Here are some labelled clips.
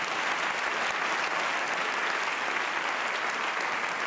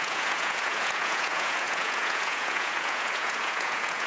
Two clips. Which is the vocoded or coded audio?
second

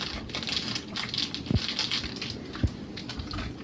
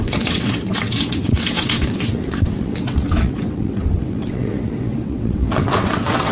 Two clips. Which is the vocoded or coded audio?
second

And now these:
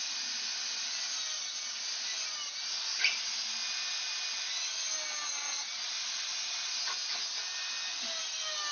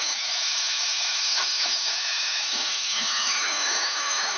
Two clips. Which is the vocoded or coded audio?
second